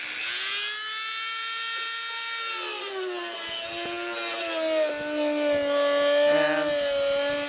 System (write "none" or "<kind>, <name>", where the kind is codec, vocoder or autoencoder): none